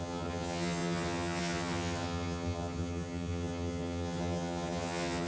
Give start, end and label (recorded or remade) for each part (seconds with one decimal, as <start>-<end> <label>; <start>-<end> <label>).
0.0-5.3 remade